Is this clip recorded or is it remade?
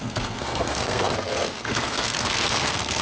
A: remade